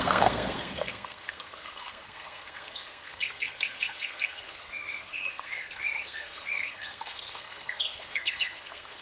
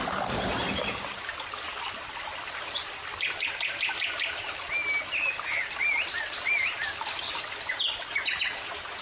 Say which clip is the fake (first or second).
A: first